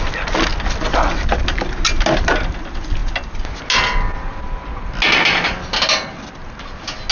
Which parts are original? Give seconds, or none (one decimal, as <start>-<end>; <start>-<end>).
0.0-7.1